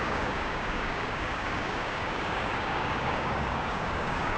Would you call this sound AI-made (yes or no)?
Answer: yes